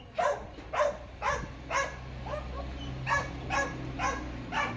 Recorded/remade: recorded